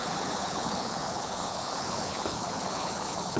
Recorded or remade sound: remade